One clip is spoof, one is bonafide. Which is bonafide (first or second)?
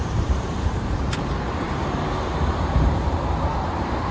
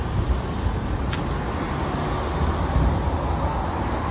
second